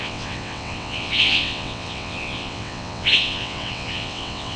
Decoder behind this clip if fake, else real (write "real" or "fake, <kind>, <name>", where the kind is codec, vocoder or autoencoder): fake, vocoder, WaveNeXt